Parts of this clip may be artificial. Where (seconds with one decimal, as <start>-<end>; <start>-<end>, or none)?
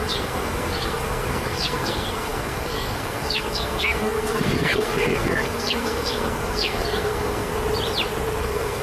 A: 0.0-7.5; 8.4-8.8